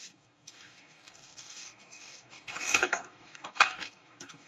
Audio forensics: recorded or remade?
remade